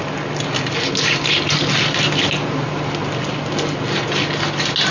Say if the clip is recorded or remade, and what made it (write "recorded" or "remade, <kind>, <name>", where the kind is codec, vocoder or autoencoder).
recorded